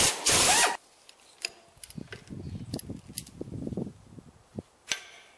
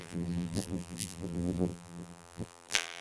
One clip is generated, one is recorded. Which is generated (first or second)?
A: second